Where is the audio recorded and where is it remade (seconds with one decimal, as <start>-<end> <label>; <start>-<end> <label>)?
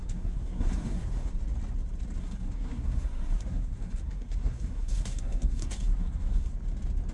0.0-1.3 remade; 1.3-2.2 recorded; 2.2-6.5 remade; 6.5-7.1 recorded